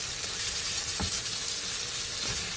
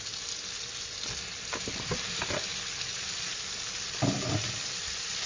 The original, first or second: second